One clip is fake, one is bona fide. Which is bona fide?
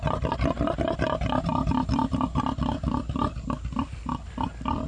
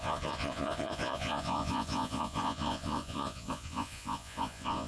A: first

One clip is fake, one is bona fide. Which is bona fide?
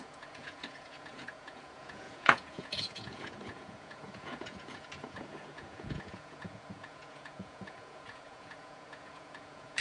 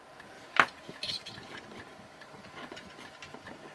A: second